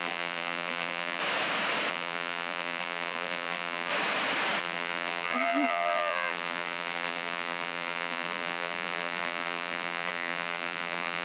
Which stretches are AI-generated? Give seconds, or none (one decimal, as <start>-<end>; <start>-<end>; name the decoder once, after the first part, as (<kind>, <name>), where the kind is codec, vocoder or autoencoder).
0.0-1.2 (vocoder, BigVGAN v2); 1.9-3.9; 4.6-11.2